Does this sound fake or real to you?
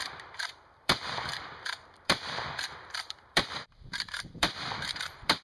fake